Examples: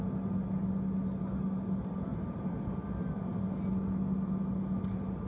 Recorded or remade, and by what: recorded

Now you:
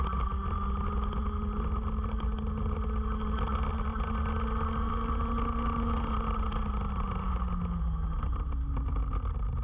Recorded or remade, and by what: recorded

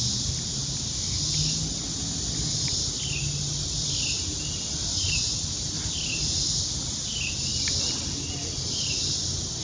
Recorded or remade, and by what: recorded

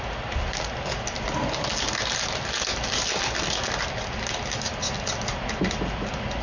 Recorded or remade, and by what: recorded